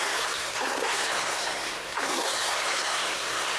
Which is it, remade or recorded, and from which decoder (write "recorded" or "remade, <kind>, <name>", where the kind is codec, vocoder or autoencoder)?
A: remade, codec, SNAC